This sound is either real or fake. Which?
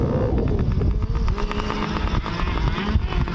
real